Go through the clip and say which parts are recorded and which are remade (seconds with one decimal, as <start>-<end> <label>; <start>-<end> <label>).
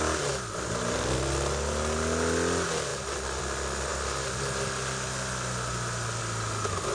0.0-6.9 recorded